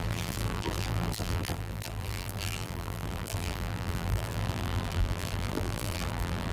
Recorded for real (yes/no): no